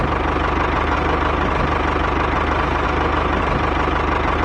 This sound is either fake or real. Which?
real